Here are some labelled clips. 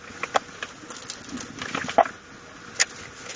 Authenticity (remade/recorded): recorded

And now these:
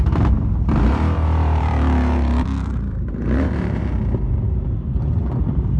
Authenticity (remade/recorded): remade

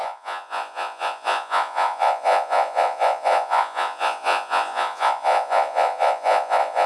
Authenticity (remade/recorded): remade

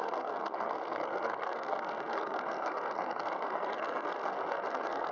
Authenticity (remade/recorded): remade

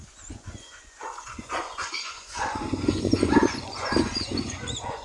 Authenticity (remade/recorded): remade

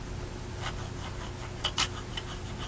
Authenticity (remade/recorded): recorded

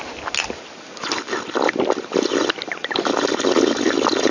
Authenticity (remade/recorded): recorded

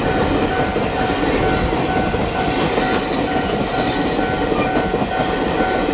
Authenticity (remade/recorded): recorded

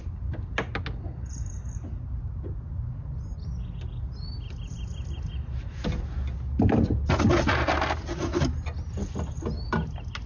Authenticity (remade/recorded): recorded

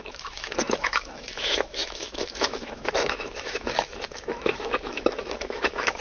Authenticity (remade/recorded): remade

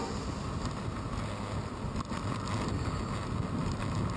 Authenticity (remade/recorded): recorded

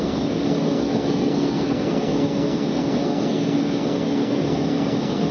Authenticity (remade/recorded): remade